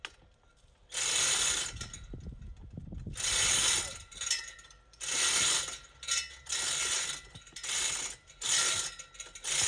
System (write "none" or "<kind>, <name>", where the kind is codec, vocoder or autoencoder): none